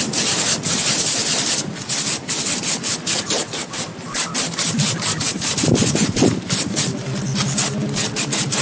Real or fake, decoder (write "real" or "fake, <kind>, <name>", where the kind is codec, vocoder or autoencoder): real